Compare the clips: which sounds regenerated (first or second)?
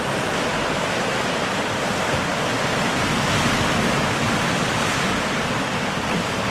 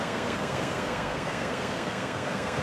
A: second